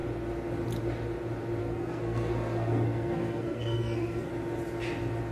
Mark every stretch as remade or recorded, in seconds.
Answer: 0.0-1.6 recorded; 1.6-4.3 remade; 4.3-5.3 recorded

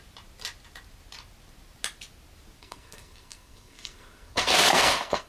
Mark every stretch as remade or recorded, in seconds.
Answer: 0.0-2.6 recorded; 2.6-5.3 remade

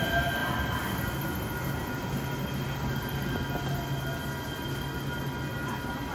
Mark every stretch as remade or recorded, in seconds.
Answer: 0.0-6.1 recorded